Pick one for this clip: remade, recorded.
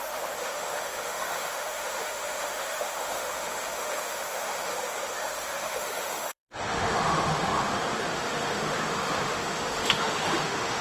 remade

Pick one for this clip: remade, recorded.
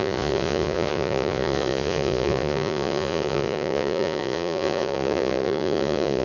remade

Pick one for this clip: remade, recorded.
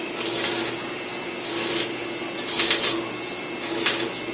recorded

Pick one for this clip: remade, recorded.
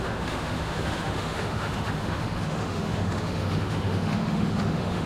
remade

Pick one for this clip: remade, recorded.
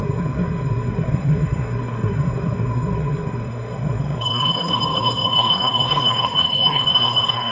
remade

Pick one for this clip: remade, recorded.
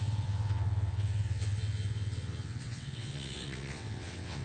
remade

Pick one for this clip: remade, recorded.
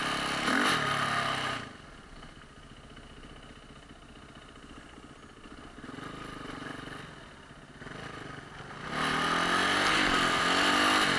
recorded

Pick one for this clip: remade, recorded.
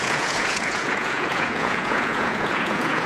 remade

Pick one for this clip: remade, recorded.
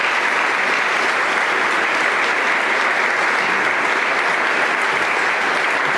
recorded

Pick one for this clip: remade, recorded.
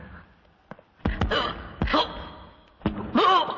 recorded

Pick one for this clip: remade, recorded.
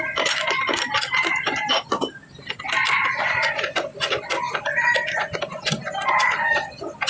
recorded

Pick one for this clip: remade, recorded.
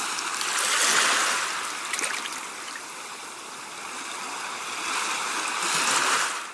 recorded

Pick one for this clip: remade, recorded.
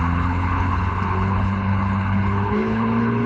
remade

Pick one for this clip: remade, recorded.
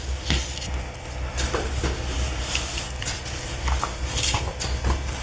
recorded